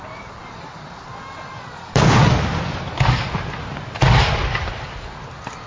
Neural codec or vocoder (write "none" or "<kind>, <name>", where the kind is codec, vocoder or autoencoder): none